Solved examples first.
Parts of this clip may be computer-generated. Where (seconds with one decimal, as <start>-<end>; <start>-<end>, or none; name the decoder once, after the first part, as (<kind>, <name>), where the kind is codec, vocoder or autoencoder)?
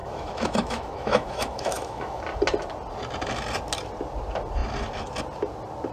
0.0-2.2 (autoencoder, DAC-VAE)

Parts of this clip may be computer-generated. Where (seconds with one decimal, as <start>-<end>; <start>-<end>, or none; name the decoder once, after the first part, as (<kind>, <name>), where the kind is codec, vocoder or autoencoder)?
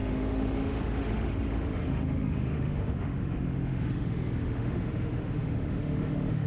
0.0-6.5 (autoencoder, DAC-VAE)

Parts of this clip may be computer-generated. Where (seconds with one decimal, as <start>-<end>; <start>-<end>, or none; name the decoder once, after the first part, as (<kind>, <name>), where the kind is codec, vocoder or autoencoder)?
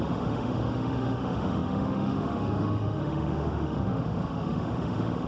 0.0-5.3 (autoencoder, DAC-VAE)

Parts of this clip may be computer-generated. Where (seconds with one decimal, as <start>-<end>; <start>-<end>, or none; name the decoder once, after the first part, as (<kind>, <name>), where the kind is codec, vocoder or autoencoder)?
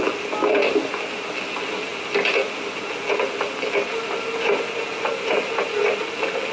none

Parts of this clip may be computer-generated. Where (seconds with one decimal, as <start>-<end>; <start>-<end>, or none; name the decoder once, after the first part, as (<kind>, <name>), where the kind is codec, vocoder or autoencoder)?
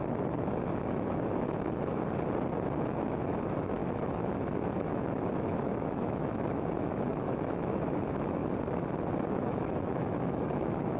0.0-1.9 (autoencoder, DAC-VAE); 2.8-8.4; 9.1-11.0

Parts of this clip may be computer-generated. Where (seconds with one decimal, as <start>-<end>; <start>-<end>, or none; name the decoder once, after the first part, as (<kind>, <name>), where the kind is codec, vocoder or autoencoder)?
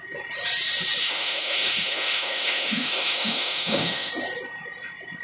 1.0-4.1 (autoencoder, DAC-VAE)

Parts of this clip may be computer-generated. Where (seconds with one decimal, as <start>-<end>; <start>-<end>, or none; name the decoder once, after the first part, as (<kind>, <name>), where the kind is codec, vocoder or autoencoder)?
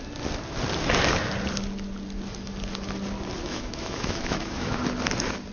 3.4-4.8 (autoencoder, DAC-VAE)